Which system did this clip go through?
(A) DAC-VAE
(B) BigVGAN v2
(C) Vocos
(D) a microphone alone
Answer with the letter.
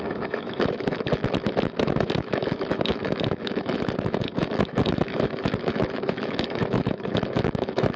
A